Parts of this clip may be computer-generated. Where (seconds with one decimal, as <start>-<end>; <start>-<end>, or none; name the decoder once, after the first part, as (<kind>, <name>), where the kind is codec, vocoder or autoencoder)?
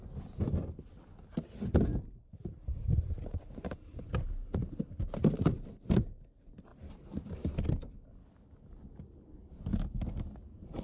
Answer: 1.9-4.1 (vocoder, BigVGAN v2)